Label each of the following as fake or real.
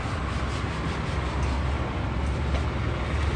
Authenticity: real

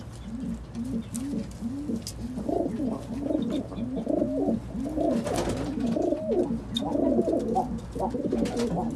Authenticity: real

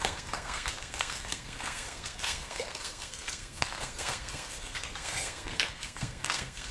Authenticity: fake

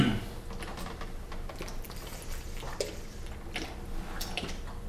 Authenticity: real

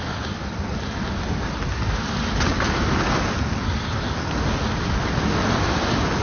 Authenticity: real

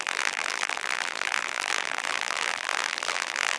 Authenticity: fake